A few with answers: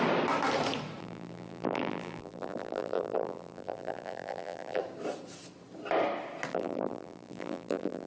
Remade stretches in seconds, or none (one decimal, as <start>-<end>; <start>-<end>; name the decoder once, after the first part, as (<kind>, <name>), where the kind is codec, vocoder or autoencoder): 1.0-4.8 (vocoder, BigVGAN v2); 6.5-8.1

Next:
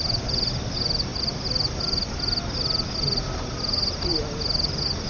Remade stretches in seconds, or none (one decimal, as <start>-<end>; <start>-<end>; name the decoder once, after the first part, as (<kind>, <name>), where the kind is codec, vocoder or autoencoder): none

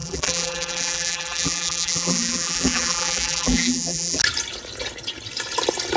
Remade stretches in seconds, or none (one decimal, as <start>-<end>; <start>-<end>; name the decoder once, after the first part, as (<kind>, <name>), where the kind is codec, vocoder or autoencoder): 0.0-4.2 (vocoder, BigVGAN v2)

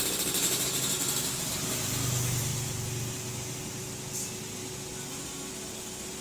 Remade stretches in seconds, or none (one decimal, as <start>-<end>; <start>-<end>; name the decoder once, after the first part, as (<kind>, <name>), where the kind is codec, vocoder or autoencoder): none

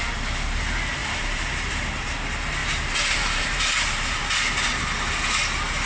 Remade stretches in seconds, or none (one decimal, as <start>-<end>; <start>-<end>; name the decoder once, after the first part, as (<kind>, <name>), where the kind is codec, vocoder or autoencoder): 1.0-2.1 (vocoder, BigVGAN v2); 2.6-4.2

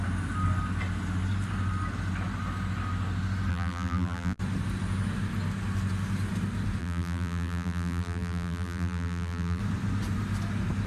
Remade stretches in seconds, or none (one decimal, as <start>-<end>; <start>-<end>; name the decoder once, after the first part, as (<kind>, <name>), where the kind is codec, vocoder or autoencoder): 3.5-4.4 (vocoder, BigVGAN v2); 6.8-9.6